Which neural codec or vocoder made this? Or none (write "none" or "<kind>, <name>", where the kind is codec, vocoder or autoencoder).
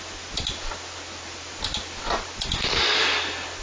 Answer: none